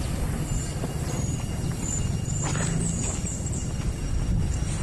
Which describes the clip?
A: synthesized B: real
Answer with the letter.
B